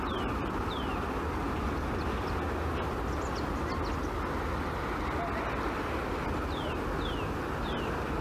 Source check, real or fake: real